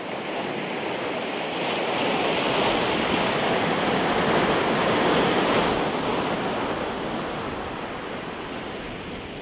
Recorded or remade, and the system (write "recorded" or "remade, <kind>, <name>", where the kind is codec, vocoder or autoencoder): recorded